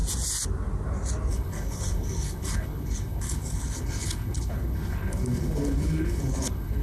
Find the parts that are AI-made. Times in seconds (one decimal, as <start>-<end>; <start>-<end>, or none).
1.3-6.8